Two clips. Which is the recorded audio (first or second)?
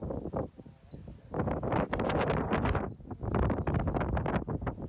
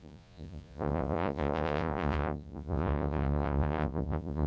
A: first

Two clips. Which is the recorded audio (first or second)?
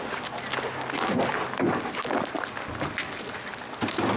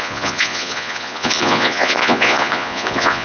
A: first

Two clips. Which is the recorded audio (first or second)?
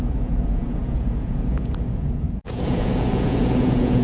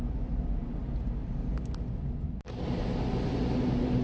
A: second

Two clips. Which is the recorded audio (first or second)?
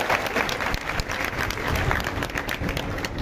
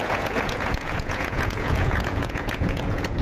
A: first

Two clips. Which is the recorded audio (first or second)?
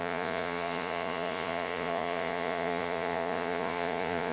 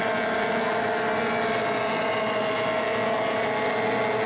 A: second